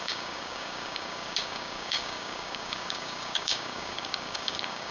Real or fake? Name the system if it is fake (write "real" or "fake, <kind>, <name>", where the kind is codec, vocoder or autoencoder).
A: fake, codec, DAC